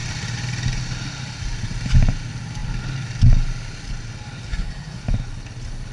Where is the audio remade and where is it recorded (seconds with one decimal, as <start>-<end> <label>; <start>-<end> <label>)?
0.0-4.5 recorded; 4.5-5.0 remade; 5.0-5.9 recorded